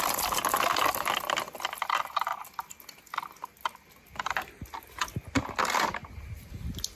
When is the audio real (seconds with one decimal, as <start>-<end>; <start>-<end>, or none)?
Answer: 0.0-7.0